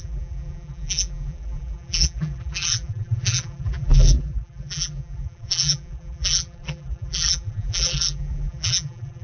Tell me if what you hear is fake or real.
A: fake